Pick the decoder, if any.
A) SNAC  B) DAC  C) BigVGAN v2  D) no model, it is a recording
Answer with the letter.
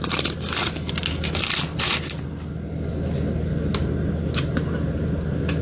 D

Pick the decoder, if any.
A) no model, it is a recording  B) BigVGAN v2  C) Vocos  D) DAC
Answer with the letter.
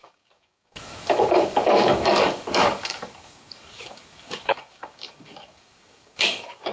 D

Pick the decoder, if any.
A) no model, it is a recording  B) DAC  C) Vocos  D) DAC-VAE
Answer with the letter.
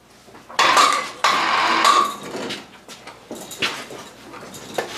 A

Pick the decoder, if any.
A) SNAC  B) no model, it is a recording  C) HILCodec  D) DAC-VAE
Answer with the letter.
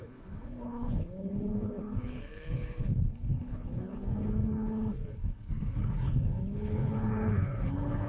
C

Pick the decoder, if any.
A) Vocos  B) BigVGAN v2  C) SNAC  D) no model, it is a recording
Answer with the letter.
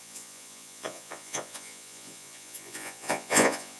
A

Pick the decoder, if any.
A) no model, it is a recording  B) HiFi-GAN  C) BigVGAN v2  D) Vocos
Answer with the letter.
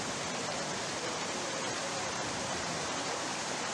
C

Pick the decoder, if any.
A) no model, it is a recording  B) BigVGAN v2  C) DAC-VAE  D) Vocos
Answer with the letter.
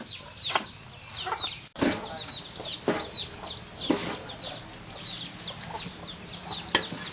A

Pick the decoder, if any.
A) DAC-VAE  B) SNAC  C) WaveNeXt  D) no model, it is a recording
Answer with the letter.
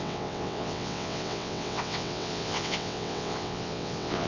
C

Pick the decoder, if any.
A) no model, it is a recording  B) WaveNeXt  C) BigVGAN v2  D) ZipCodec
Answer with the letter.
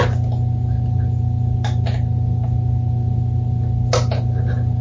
A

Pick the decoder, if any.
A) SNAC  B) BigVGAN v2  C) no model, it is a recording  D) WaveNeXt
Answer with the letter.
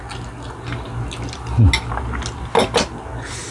C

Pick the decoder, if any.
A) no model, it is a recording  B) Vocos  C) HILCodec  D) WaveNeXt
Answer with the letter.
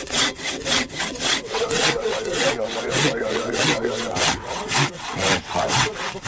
D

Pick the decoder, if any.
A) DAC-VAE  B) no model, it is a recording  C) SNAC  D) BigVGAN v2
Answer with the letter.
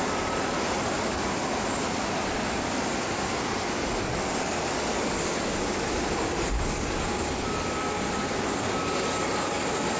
B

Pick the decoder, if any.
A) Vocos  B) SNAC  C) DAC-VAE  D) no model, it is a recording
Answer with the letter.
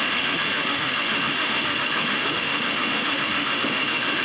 C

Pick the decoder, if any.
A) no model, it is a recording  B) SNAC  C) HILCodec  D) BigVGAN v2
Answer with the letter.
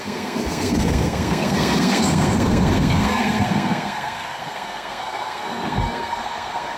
B